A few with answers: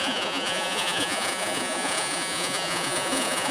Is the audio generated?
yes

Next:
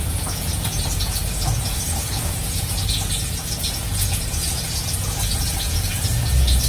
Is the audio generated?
yes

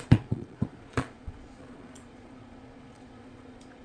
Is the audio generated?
yes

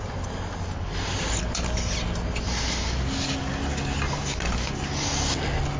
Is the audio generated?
no